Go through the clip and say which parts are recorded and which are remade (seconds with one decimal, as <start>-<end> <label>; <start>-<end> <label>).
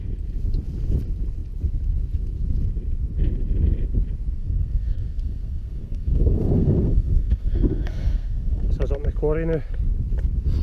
0.0-4.4 recorded; 4.4-8.7 remade; 8.7-10.6 recorded